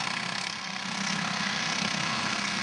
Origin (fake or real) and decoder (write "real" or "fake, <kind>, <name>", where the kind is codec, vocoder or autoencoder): fake, codec, SNAC